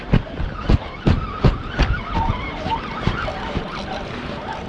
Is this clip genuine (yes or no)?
yes